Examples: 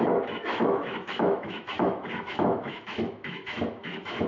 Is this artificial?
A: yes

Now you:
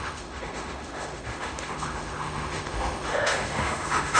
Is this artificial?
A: yes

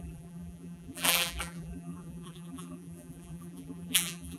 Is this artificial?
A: yes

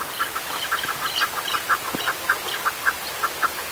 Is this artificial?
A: no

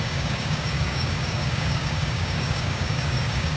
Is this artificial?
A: yes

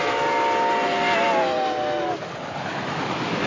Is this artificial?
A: no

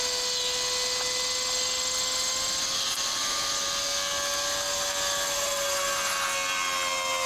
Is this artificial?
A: no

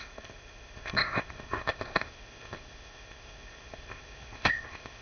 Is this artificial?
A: yes